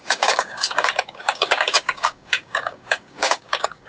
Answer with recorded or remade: remade